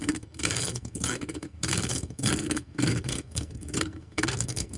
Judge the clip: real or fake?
fake